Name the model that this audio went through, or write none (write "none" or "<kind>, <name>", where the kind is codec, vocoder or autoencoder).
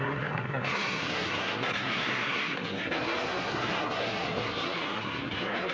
codec, SNAC